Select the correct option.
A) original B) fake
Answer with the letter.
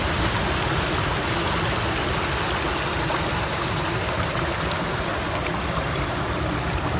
A